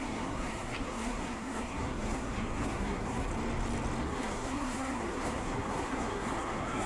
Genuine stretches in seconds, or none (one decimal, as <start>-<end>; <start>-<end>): 3.3-4.0